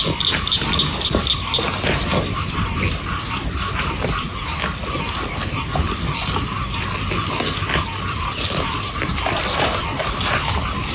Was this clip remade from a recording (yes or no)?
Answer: no